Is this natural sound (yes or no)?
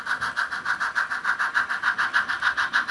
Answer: yes